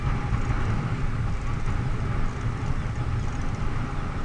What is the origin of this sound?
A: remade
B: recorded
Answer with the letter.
B